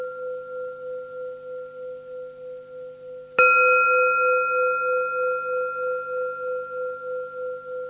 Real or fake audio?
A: real